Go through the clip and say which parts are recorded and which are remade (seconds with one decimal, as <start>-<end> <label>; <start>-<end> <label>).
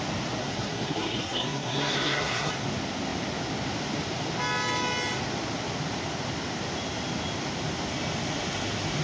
0.0-0.4 recorded; 0.4-2.5 remade; 2.5-9.0 recorded